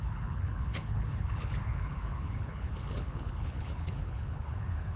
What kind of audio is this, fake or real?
fake